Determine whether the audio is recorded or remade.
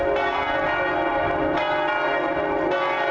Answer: recorded